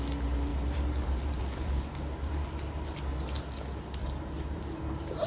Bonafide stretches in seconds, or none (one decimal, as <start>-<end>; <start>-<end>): 0.0-0.5; 3.0-4.0